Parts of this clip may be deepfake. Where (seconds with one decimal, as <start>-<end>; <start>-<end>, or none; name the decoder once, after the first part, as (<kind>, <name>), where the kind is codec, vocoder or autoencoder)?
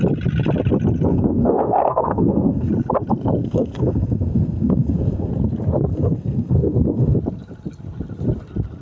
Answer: 1.1-2.7 (codec, SNAC); 3.4-5.3; 5.9-7.2